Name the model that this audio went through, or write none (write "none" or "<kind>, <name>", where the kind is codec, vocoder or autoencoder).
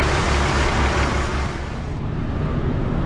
none